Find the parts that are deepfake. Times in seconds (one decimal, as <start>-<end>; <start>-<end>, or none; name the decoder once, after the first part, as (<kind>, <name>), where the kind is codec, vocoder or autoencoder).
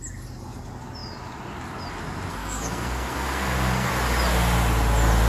2.3-3.9 (codec, SNAC)